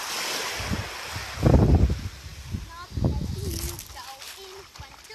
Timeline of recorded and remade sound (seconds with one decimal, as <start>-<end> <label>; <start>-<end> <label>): 0.0-5.1 recorded